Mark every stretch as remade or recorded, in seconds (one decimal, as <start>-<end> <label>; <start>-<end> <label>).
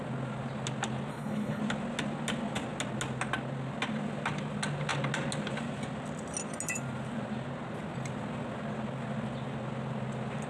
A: 0.0-1.1 recorded; 1.1-1.6 remade; 1.6-10.5 recorded